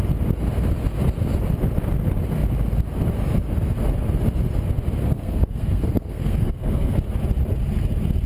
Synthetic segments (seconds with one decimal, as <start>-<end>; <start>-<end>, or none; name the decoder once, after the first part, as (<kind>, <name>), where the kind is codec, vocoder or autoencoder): 5.0-7.1 (codec, SNAC)